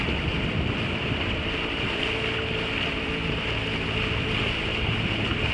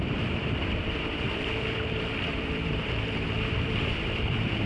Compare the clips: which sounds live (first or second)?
first